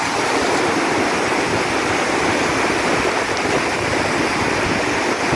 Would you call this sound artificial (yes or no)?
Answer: no